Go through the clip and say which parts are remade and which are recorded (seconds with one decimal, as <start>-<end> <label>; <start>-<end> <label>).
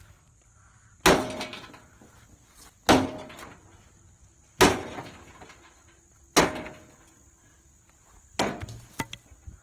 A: 0.0-9.6 recorded